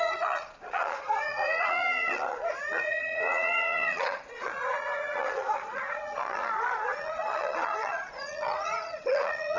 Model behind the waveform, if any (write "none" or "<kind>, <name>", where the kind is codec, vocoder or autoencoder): vocoder, Vocos